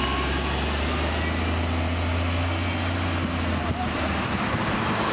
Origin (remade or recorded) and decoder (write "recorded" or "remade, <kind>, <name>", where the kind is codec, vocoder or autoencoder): recorded